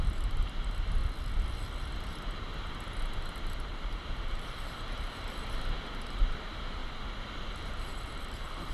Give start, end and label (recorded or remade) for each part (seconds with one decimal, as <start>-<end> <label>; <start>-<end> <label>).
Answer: 0.0-1.0 remade; 1.0-1.9 recorded; 1.9-2.5 remade; 2.5-3.2 recorded; 3.2-6.8 remade; 6.8-7.6 recorded; 7.6-8.7 remade